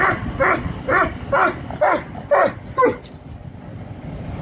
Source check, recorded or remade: recorded